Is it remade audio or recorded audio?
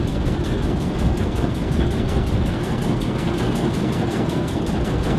remade